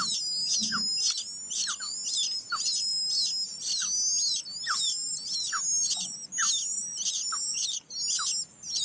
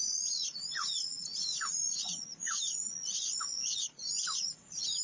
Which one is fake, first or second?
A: second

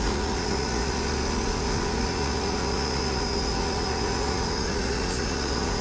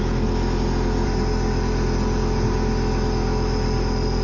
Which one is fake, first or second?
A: first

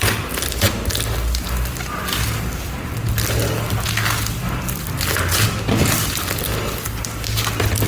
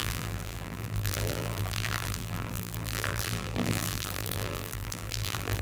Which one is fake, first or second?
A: second